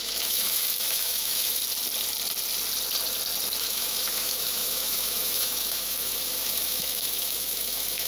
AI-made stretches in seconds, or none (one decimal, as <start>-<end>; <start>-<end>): 0.0-1.6; 3.6-8.1